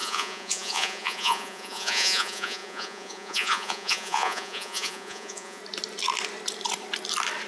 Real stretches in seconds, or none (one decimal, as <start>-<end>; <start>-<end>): 5.6-7.5